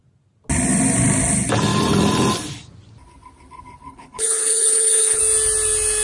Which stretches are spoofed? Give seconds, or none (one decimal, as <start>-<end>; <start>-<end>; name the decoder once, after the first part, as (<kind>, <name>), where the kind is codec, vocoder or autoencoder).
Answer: 3.9-5.2 (codec, HILCodec)